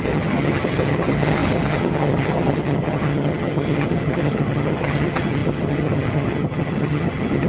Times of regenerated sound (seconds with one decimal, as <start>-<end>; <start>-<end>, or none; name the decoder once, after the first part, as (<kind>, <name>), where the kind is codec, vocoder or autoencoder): 0.0-7.5 (vocoder, HiFi-GAN)

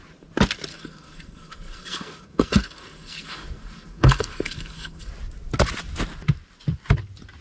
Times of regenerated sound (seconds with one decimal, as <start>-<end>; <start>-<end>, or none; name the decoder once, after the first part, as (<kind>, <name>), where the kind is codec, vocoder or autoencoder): 0.7-5.1 (codec, SNAC)

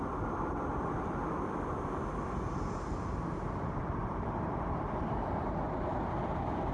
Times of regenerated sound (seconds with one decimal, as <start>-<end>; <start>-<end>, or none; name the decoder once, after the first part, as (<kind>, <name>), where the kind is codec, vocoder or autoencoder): 0.0-6.7 (vocoder, BigVGAN v2)

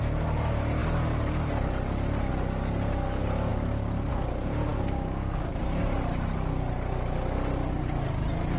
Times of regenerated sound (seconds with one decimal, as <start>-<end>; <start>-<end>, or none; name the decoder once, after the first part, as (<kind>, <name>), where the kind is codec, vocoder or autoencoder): none